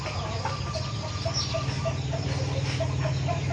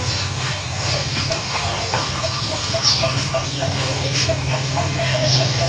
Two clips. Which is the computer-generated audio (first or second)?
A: second